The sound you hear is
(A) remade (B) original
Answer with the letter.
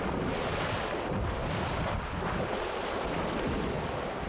B